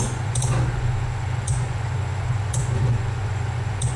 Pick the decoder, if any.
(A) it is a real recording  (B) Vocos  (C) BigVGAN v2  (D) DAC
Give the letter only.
B